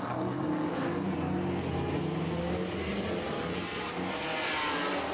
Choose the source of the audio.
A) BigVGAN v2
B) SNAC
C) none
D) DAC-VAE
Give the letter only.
C